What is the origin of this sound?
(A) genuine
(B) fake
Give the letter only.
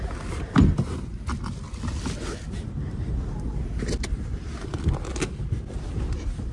A